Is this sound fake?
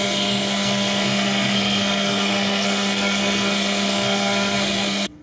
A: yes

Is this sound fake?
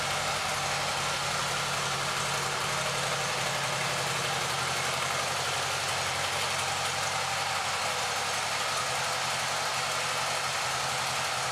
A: no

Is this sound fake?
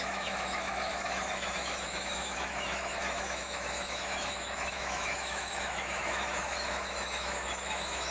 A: yes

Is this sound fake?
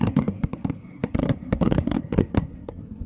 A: yes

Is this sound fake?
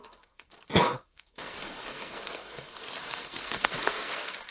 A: yes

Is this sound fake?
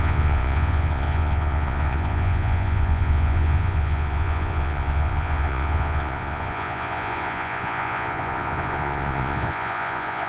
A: yes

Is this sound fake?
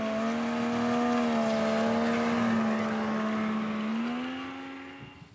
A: no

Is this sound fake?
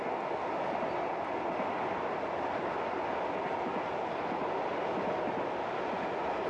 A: no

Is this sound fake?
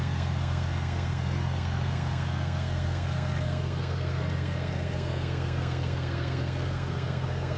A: yes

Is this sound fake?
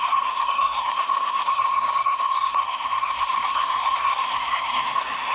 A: yes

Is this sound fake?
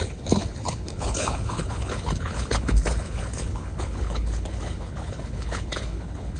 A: yes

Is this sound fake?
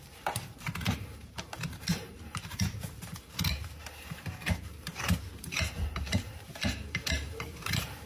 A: yes